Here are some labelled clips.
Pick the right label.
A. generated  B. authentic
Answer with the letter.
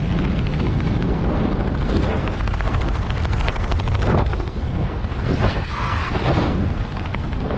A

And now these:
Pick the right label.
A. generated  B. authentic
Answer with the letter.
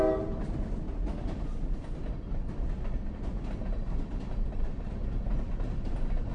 B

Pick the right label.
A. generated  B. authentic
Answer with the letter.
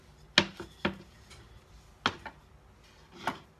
B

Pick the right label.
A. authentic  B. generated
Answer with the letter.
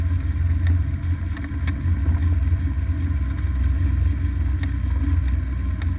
A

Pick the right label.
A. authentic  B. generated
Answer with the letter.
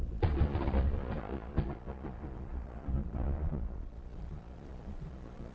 B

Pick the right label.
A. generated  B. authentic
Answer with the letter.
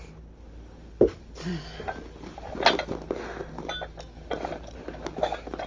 B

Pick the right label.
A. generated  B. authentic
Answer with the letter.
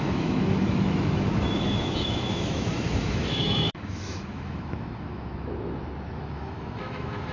A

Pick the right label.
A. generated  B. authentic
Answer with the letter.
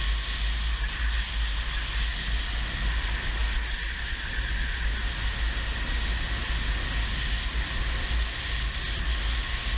B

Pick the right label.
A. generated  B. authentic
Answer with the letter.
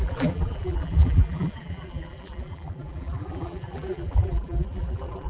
A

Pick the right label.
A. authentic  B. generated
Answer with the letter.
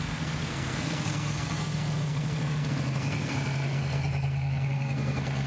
B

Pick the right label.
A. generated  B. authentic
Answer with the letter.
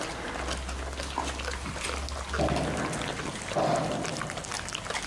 B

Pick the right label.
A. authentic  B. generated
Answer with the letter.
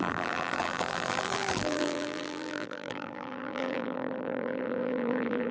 B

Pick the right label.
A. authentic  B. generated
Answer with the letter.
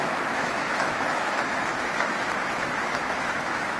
B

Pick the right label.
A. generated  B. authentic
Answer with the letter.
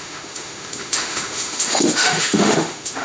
A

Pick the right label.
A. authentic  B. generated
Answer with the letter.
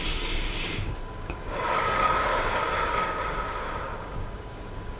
B